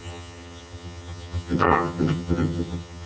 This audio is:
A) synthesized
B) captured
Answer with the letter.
A